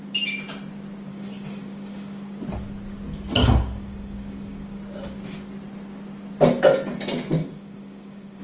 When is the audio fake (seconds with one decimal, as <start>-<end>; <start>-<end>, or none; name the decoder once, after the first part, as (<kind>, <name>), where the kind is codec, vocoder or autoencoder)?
1.1-2.4 (codec, DAC); 3.4-4.8; 7.4-8.4